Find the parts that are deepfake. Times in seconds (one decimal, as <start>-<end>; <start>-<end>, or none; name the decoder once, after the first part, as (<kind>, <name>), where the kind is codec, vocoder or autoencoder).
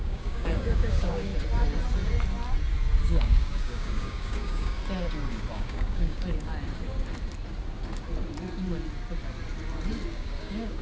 0.0-1.3 (codec, DAC); 3.0-4.8; 5.5-6.5; 10.1-10.8